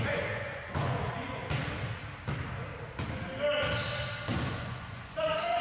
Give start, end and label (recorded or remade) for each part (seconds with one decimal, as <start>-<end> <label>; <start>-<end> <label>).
0.0-1.4 remade; 1.4-4.5 recorded; 4.5-5.6 remade